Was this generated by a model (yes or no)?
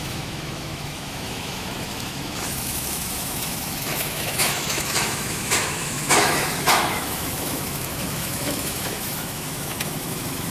yes